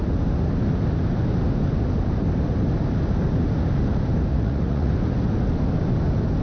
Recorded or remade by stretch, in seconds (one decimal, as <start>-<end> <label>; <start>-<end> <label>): 0.0-4.3 recorded; 4.3-4.9 remade; 4.9-6.4 recorded